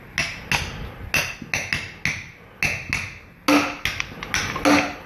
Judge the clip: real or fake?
real